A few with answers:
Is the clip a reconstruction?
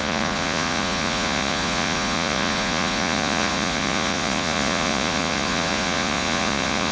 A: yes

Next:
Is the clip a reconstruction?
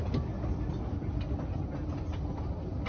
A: no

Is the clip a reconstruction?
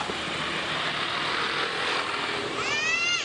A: no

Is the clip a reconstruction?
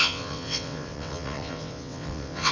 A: yes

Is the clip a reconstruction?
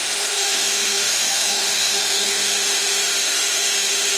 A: yes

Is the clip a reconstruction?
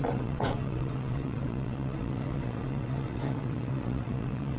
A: yes